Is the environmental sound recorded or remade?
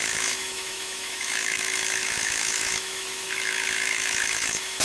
remade